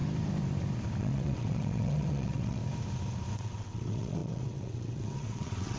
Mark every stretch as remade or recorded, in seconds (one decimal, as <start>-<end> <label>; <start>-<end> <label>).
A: 0.0-1.0 recorded; 1.0-2.6 remade; 2.6-3.3 recorded; 3.3-5.8 remade